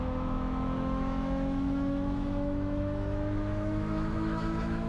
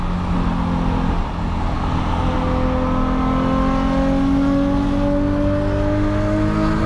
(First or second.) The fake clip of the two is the first